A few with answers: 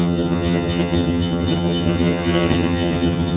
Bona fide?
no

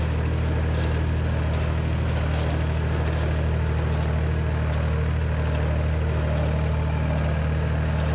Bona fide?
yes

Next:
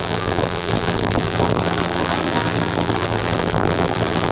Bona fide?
no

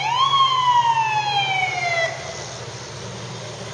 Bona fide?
yes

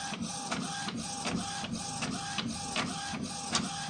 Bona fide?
yes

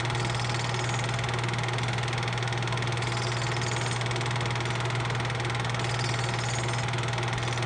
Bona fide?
yes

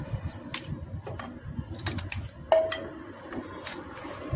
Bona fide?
yes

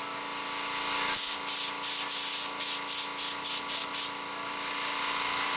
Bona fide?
yes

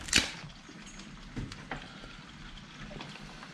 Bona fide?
yes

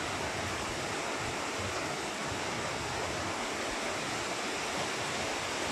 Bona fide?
yes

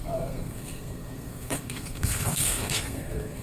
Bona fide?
no